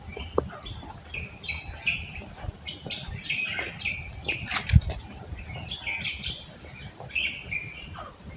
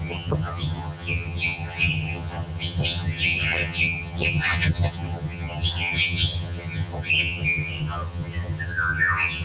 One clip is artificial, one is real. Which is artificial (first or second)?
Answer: second